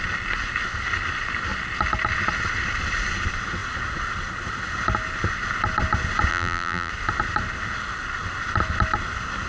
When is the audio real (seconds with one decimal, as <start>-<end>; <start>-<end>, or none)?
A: 0.0-6.3; 6.9-9.5